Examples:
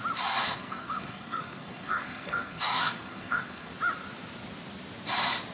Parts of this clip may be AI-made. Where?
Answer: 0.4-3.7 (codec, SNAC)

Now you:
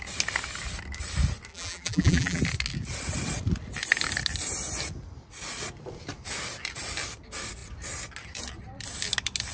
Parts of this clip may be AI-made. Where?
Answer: 1.5-2.4 (vocoder, BigVGAN v2)

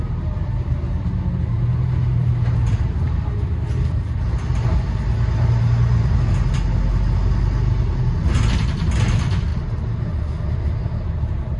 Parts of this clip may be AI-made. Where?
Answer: none

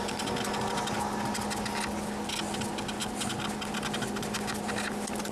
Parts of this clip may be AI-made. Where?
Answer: none

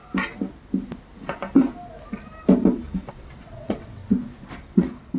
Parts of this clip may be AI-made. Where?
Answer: 3.1-4.0 (vocoder, WaveNeXt); 4.7-5.2

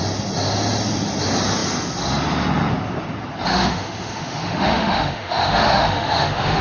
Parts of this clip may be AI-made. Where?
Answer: 3.5-6.6 (autoencoder, DAC-VAE)

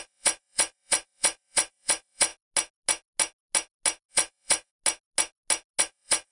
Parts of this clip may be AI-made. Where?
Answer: 0.0-2.3 (vocoder, Vocos); 4.1-4.7; 5.8-6.3

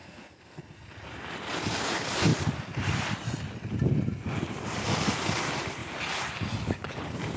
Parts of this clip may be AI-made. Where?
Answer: 0.0-0.6 (codec, SNAC)